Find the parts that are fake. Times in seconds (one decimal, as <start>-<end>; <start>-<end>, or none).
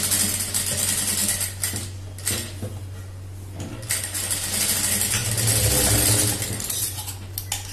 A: none